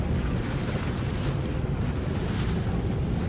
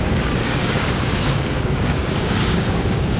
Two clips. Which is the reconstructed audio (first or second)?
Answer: second